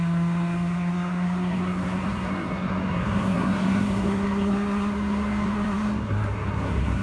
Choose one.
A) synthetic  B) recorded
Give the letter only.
A